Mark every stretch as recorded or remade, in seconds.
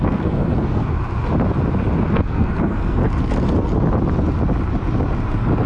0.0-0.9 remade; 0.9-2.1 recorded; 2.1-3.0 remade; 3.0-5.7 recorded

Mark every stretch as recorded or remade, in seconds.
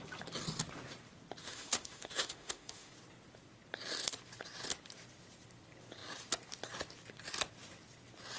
0.0-1.4 recorded; 1.4-2.9 remade; 2.9-8.4 recorded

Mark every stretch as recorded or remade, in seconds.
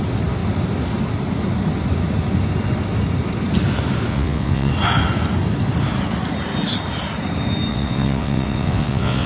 0.0-4.1 recorded; 4.1-4.7 remade; 4.7-7.7 recorded; 7.7-9.3 remade